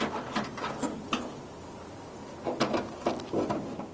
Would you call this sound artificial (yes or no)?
no